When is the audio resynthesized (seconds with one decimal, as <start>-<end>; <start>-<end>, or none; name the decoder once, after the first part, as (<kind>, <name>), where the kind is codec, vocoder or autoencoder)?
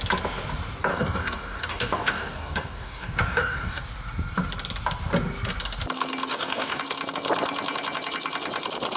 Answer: 0.9-3.8 (codec, DAC); 6.3-6.8